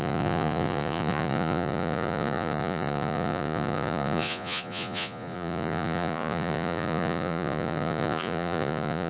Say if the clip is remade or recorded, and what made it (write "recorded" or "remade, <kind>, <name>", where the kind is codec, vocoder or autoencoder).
remade, vocoder, Vocos